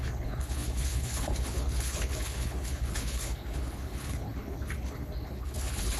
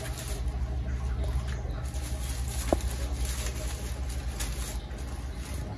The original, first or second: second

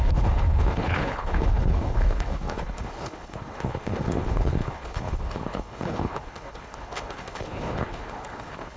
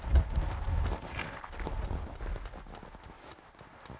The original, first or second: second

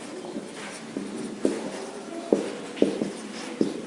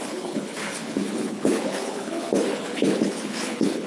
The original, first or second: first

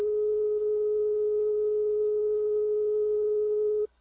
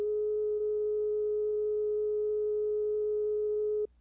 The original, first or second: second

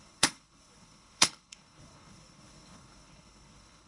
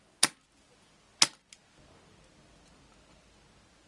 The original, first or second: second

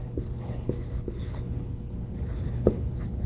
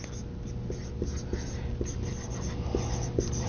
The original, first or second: second